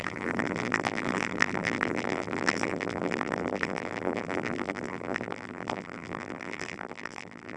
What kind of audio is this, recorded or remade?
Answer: remade